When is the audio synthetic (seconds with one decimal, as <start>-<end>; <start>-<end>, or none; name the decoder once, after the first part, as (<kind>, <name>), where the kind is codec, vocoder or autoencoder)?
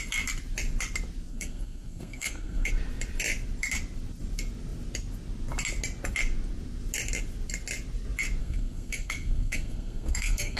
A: 1.3-2.7 (codec, SNAC); 8.4-10.6